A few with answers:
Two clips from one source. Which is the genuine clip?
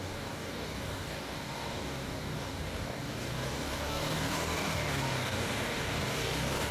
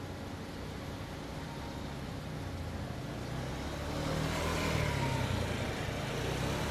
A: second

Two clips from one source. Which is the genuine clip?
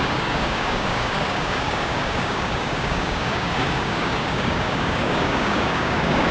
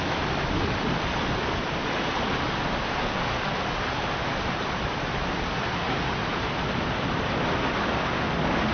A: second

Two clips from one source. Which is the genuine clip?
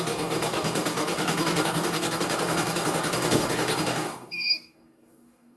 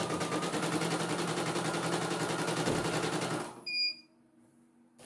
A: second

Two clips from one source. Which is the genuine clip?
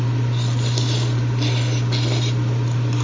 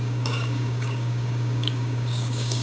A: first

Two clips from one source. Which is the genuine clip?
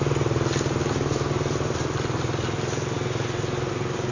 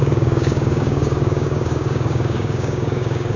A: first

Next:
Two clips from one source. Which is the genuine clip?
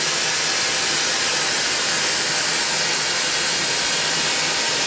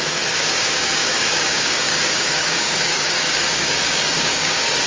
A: first